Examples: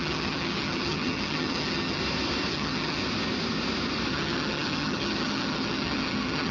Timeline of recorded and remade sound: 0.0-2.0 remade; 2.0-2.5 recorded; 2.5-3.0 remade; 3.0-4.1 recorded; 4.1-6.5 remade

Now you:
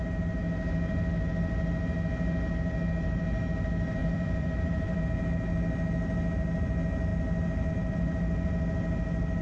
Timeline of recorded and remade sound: 0.0-4.0 recorded; 4.0-5.0 remade; 5.0-9.4 recorded

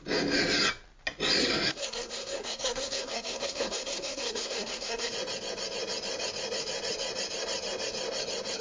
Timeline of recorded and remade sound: 0.0-1.4 recorded; 1.4-5.1 remade; 5.1-8.6 recorded

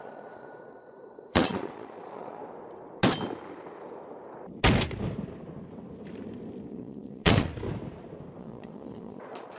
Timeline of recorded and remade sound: 0.0-2.4 remade; 2.4-6.7 recorded; 6.7-7.5 remade; 7.5-8.4 recorded; 8.4-9.6 remade

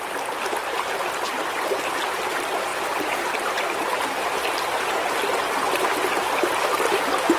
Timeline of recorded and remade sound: 0.0-7.4 recorded